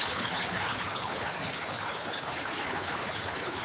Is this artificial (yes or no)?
yes